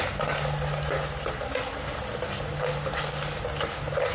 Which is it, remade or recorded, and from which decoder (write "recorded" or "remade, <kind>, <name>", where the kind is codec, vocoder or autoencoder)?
recorded